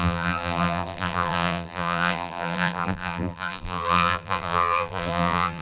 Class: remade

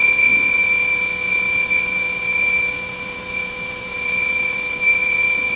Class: remade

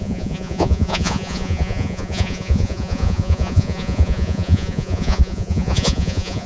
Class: remade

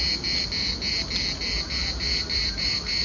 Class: recorded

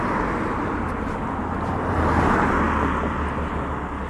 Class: recorded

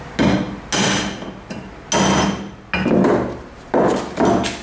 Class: recorded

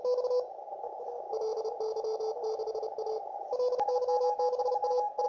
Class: recorded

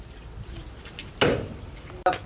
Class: recorded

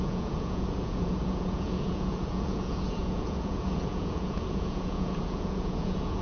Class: remade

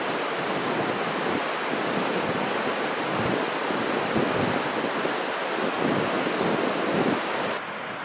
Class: recorded